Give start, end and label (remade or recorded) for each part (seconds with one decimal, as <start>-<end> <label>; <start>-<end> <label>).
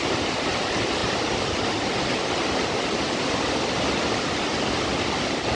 0.0-5.5 recorded